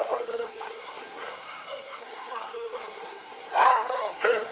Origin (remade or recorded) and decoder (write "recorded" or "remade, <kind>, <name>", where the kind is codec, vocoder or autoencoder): remade, codec, SNAC